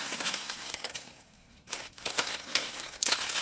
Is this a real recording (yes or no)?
no